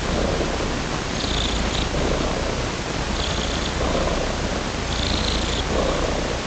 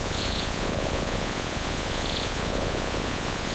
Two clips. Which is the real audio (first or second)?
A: first